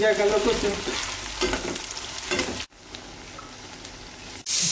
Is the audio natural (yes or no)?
yes